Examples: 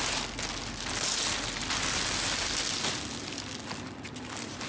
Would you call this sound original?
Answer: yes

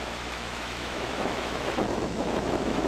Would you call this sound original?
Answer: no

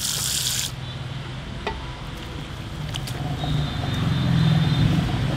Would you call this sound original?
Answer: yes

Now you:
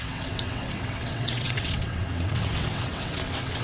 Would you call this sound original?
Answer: no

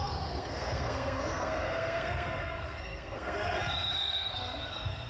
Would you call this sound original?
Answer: no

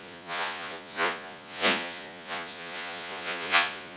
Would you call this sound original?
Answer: no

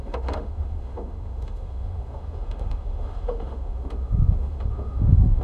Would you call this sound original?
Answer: no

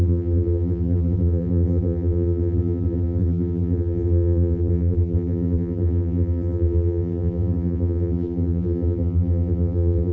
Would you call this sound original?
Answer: no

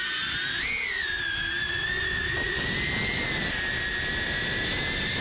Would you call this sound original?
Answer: yes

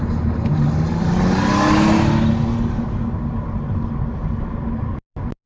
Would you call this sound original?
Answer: yes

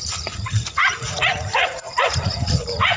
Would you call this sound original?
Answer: no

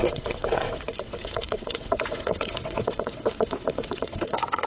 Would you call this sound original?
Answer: no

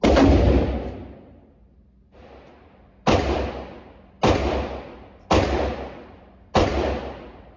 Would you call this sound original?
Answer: yes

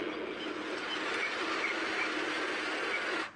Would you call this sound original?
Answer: yes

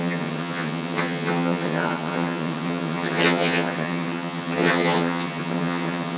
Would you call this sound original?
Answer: no